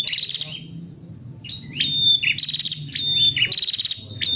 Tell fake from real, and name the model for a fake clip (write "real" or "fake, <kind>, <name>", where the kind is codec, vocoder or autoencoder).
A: real